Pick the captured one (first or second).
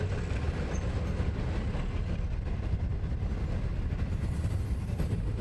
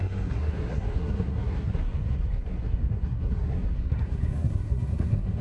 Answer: first